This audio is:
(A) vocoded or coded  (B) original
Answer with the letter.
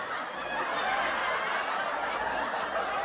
B